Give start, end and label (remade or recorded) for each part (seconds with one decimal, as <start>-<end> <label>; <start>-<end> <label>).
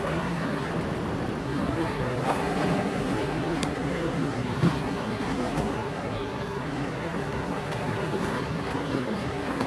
0.0-0.7 remade; 0.7-1.4 recorded; 1.4-9.7 remade